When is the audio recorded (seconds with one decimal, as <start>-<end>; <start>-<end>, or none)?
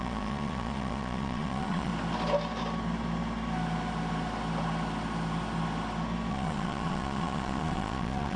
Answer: 1.9-6.3